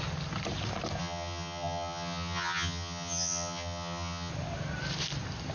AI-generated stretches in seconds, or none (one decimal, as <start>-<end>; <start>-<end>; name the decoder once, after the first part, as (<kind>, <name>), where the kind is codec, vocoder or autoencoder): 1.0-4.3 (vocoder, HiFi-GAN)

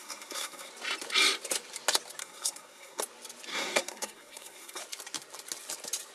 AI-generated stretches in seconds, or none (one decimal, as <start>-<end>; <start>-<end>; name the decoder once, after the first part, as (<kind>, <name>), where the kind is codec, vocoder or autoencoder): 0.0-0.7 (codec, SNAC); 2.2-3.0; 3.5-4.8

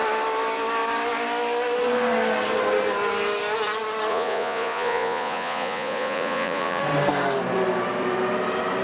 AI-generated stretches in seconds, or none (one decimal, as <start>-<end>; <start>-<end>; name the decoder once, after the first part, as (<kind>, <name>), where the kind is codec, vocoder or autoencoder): 4.1-6.8 (vocoder, Vocos)